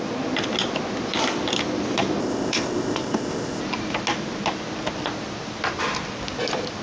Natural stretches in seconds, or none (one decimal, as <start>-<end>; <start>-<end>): 0.0-2.2; 3.6-6.8